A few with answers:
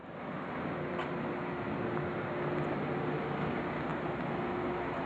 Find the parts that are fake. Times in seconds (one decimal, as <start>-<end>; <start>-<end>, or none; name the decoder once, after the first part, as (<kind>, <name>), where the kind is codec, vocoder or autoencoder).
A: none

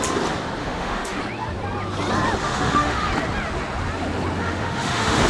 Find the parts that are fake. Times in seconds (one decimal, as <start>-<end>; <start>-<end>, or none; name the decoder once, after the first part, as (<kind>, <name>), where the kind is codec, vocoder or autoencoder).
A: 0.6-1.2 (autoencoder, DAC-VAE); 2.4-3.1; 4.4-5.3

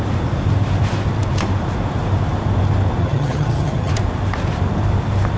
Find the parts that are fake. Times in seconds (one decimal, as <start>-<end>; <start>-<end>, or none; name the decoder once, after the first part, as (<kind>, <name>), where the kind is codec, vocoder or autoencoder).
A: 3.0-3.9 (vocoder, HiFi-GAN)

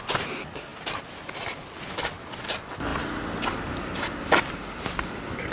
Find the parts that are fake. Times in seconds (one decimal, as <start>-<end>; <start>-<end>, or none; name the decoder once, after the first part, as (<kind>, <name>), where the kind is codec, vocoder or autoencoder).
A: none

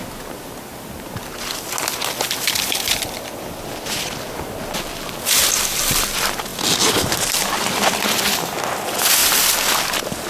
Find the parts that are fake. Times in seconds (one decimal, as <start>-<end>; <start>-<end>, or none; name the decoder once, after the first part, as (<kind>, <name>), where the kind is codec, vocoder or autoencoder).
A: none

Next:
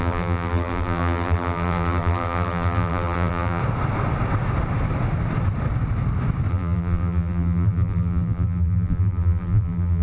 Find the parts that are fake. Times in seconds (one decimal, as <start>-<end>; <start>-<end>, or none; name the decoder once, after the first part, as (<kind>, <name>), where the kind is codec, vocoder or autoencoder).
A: 0.0-3.6 (vocoder, BigVGAN v2); 6.5-10.0

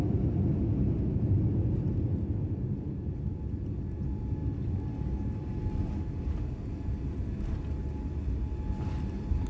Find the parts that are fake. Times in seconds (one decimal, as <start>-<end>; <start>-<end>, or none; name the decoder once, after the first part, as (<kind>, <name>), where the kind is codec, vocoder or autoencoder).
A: none

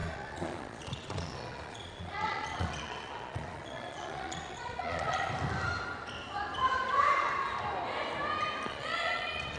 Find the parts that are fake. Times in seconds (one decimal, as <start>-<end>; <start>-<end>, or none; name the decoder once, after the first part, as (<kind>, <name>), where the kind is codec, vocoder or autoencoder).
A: 0.0-5.3 (vocoder, Vocos); 8.7-9.6